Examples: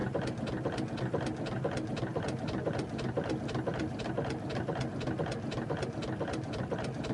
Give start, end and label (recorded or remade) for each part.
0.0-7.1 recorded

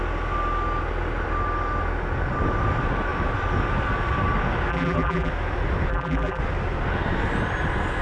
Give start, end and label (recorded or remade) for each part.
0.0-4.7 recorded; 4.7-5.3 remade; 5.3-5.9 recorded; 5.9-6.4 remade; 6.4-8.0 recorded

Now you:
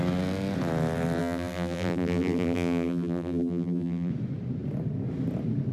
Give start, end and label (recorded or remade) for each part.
0.0-1.2 recorded; 1.2-4.1 remade; 4.1-5.7 recorded

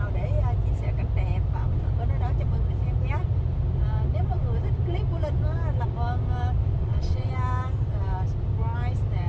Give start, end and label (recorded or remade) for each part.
0.0-6.8 recorded; 6.8-7.3 remade; 7.3-9.3 recorded

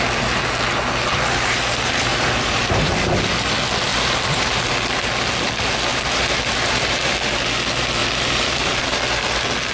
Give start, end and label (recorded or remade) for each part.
0.0-2.1 recorded; 2.1-2.9 remade; 2.9-3.9 recorded; 3.9-4.6 remade; 4.6-5.9 recorded; 5.9-7.1 remade; 7.1-8.0 recorded; 8.0-8.8 remade; 8.8-9.7 recorded

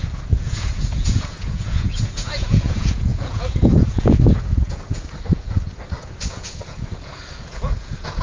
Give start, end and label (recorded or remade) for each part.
0.0-8.2 remade